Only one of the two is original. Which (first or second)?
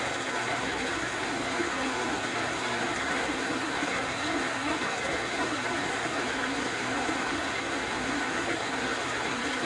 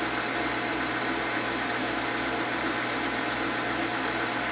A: second